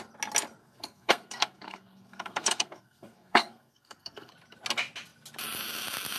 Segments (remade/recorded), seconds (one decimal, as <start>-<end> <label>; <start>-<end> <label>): 0.0-0.6 recorded; 0.6-4.3 remade; 4.3-6.2 recorded